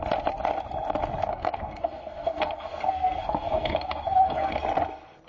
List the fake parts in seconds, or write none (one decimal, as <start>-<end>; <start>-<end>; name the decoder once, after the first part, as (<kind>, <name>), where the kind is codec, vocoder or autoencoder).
1.3-4.5 (codec, SNAC)

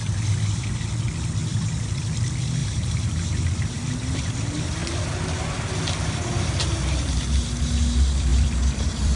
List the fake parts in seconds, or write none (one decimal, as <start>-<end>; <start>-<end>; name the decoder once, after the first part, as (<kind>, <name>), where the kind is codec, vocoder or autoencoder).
1.4-2.0 (vocoder, BigVGAN v2); 2.6-3.3; 8.3-9.2

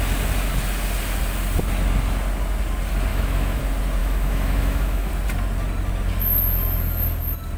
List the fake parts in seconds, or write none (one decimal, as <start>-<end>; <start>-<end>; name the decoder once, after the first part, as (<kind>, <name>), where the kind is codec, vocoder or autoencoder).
3.1-3.6 (autoencoder, DAC-VAE); 4.0-5.1

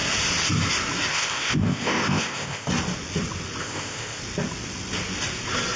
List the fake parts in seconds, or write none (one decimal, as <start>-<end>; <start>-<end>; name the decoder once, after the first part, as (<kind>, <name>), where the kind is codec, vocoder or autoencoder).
1.1-2.7 (codec, ZipCodec); 3.6-4.2

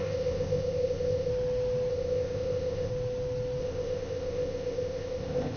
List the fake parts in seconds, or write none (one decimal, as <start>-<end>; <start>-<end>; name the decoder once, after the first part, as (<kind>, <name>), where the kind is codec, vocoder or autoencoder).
0.0-1.3 (codec, ZipCodec); 1.9-2.9; 3.6-5.6

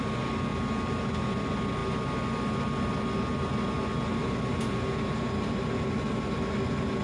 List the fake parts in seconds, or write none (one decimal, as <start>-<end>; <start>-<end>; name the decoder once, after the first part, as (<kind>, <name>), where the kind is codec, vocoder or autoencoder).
none